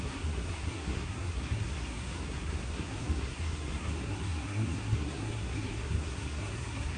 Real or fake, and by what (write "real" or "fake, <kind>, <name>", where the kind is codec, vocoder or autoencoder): fake, codec, SNAC